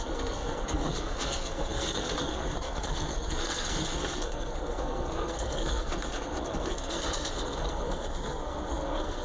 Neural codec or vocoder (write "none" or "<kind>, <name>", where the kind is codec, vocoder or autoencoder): codec, SNAC